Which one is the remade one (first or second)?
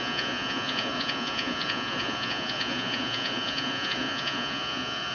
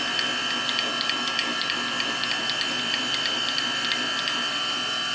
first